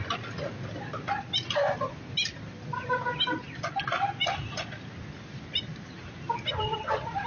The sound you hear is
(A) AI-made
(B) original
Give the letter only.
B